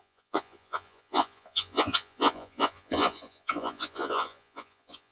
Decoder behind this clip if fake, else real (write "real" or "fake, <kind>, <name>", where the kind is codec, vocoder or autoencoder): fake, vocoder, Vocos